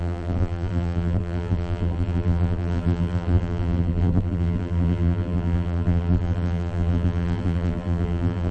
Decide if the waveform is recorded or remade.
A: remade